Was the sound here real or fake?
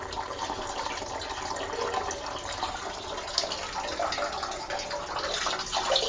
real